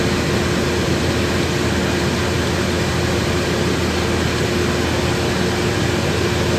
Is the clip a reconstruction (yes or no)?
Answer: no